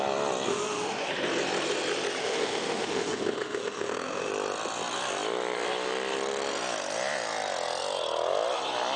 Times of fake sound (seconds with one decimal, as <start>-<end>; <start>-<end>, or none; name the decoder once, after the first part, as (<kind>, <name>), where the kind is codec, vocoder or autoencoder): 0.5-1.1 (autoencoder, DAC-VAE); 2.2-4.3